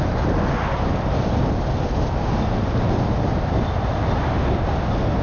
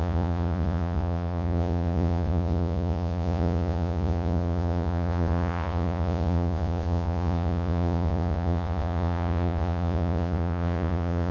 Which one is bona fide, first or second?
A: first